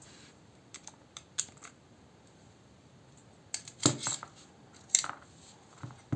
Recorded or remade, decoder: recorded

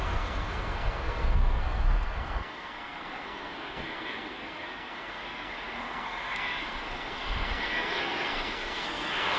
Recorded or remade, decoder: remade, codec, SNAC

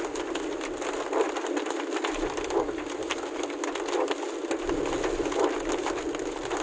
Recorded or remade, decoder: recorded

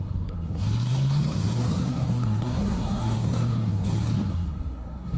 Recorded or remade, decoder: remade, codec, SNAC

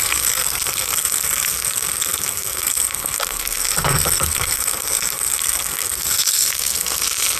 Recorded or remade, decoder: remade, codec, SNAC